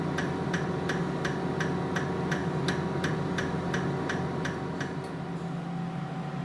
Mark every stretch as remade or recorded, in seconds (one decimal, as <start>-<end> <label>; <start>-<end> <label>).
0.0-6.4 recorded